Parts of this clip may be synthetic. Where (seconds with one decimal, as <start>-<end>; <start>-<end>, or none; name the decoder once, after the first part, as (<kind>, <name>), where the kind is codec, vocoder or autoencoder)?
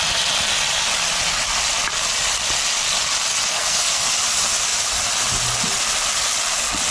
3.5-4.1 (codec, SNAC)